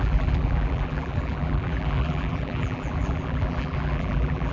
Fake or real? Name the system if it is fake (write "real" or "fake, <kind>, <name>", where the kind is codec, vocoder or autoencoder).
fake, vocoder, BigVGAN v2